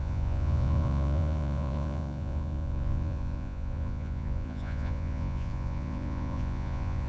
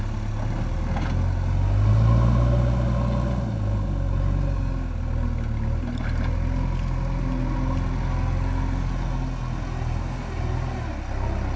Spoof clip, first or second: first